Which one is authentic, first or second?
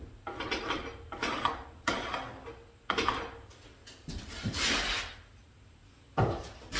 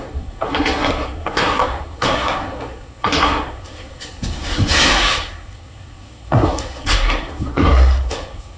first